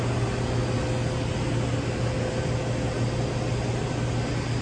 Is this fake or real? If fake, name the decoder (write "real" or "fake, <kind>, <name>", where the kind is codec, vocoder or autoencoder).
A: real